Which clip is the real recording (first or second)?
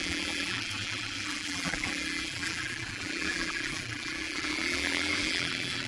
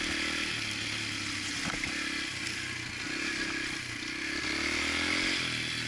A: second